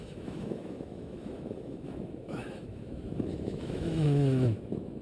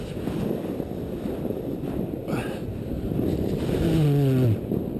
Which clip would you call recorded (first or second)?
second